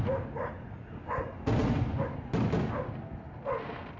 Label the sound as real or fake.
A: real